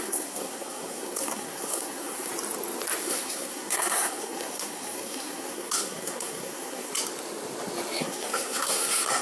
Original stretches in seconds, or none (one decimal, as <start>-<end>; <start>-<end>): 2.3-3.0; 6.9-8.0